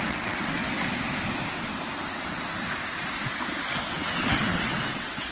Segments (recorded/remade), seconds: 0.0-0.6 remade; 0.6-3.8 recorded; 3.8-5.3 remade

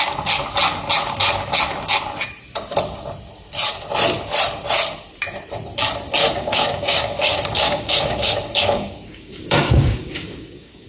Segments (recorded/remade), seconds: 0.0-6.2 recorded; 6.2-10.9 remade

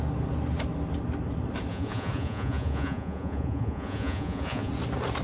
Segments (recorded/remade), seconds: 0.0-1.7 recorded; 1.7-4.7 remade; 4.7-5.2 recorded

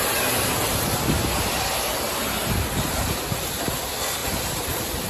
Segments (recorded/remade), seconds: 0.0-4.2 recorded; 4.2-5.1 remade

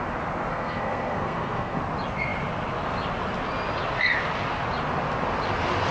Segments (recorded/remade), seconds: 0.0-0.5 recorded; 0.5-1.8 remade; 1.8-5.9 recorded

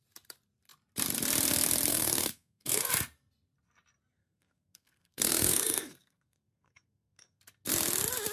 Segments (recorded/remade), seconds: 0.0-1.9 recorded; 1.9-2.9 remade; 2.9-4.2 recorded; 4.2-7.4 remade; 7.4-8.3 recorded